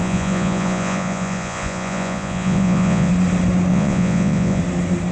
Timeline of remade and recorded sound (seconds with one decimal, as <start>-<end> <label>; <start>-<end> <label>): 0.0-3.1 remade; 3.1-3.7 recorded; 3.7-4.6 remade; 4.6-5.1 recorded